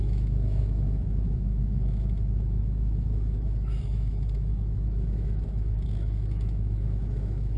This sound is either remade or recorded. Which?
remade